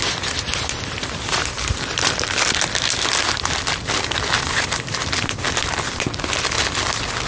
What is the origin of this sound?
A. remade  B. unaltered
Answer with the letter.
A